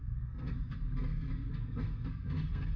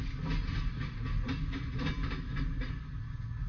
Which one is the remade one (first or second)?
first